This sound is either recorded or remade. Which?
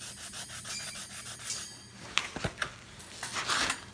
recorded